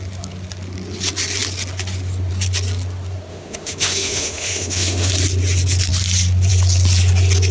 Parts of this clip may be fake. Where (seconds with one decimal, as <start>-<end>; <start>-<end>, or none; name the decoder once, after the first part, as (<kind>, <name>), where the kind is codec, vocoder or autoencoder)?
3.3-5.1 (autoencoder, DAC-VAE)

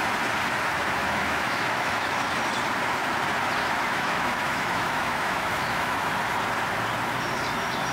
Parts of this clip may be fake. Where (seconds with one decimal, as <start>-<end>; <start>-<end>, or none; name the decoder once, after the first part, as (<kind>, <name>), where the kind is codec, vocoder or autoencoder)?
1.0-2.4 (autoencoder, DAC-VAE); 3.6-6.1

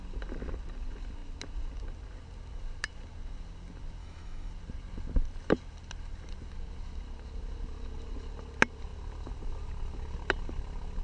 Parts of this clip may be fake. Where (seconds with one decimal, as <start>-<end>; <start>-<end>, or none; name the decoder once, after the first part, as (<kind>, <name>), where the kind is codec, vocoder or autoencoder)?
4.0-4.5 (autoencoder, DAC-VAE)

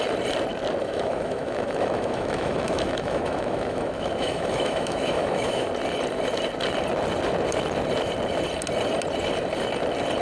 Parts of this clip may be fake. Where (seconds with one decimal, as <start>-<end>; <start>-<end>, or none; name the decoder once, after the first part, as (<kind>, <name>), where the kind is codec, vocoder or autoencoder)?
0.8-5.7 (autoencoder, DAC-VAE)